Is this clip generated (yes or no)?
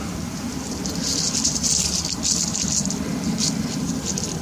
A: yes